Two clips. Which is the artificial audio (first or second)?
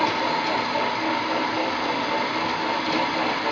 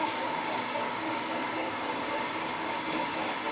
second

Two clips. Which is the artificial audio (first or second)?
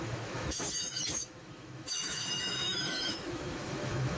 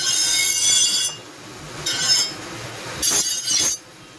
first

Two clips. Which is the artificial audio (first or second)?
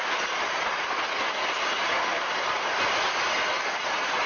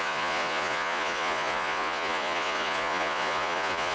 second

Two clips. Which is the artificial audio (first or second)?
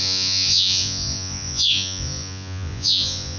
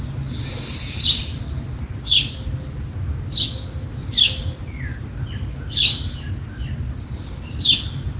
first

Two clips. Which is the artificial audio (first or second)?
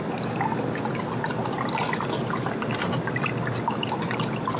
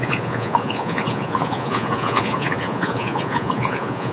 second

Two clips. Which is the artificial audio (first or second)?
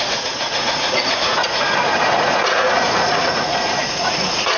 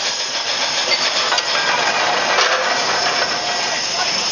first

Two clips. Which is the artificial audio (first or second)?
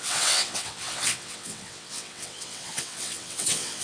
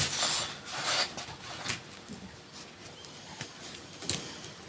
first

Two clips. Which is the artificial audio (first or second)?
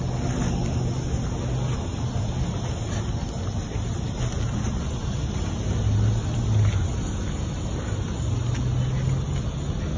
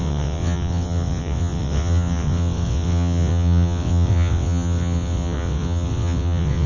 second